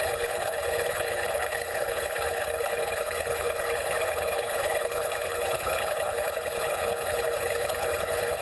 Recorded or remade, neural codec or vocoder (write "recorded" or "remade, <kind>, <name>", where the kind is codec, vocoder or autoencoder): remade, codec, HILCodec